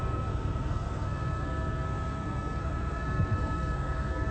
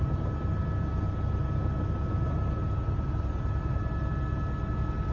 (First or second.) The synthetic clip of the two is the first